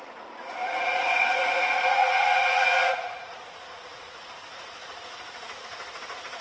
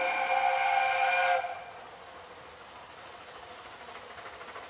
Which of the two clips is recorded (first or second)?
second